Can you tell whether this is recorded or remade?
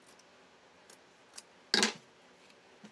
recorded